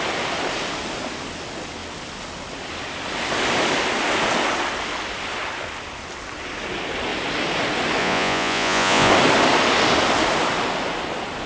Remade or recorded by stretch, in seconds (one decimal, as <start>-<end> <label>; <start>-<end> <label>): 0.0-8.0 recorded; 8.0-9.1 remade; 9.1-11.5 recorded